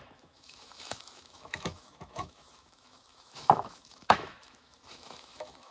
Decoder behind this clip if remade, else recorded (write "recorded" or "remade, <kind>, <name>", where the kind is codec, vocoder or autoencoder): remade, autoencoder, DAC-VAE